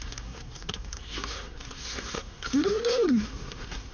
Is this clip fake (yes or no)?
yes